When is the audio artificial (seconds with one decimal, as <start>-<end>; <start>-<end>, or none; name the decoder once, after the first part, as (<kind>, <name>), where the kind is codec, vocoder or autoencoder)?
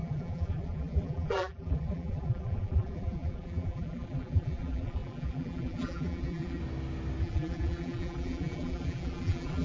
0.0-6.6 (vocoder, BigVGAN v2); 7.2-9.6